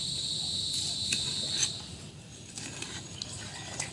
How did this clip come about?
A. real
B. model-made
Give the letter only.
A